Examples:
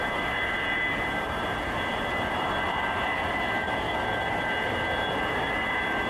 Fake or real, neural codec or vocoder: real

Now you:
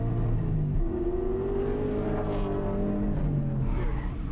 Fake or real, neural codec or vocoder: real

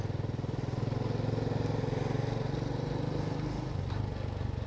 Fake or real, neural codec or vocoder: real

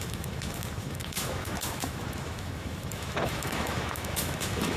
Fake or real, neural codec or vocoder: fake, autoencoder, DAC-VAE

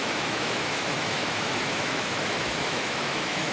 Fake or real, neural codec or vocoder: fake, autoencoder, DAC-VAE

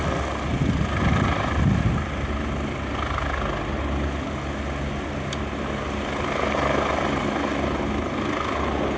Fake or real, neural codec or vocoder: real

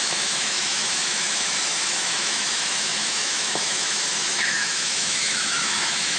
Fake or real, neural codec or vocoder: fake, autoencoder, DAC-VAE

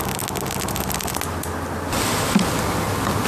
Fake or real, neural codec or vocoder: real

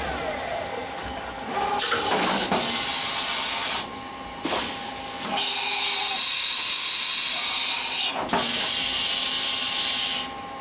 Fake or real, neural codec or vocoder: real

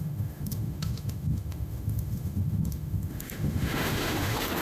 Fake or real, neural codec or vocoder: fake, autoencoder, DAC-VAE